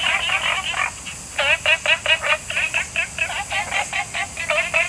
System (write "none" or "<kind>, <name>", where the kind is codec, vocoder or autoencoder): none